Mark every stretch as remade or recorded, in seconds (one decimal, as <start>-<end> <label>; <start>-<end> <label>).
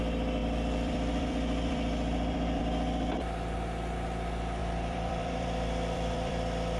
0.0-0.4 recorded; 0.4-2.6 remade; 2.6-4.6 recorded; 4.6-6.8 remade